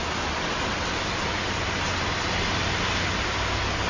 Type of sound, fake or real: real